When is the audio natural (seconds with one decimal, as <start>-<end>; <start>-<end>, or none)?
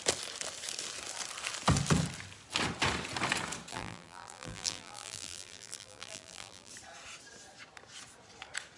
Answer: 0.0-3.7; 6.7-8.8